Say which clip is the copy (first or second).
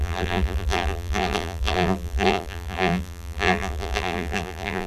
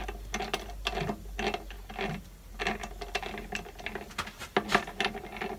first